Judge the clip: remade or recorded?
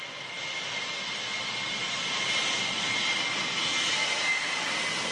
recorded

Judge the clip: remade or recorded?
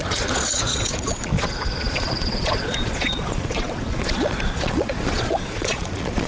remade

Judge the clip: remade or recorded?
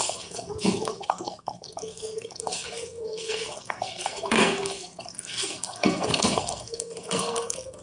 remade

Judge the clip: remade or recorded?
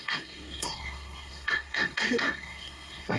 remade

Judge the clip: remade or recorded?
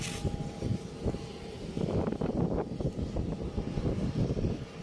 recorded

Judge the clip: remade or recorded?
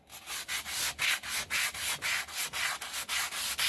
recorded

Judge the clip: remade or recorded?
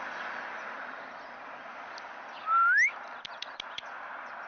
recorded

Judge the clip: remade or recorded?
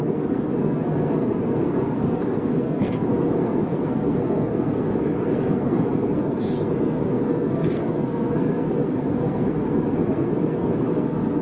remade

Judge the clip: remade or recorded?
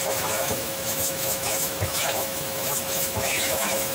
remade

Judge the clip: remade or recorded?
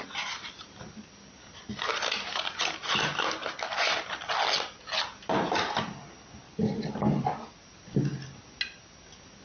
recorded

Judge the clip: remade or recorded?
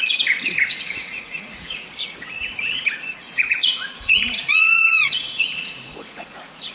remade